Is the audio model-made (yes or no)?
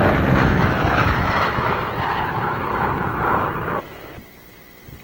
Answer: yes